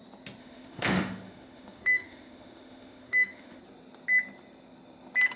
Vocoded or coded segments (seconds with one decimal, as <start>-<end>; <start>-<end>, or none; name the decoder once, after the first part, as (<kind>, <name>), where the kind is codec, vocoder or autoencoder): 0.4-3.6 (autoencoder, DAC-VAE)